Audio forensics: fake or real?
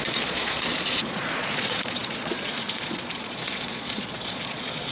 fake